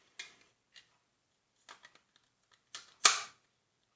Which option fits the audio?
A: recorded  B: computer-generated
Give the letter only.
A